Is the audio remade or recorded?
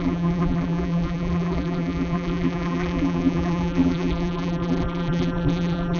remade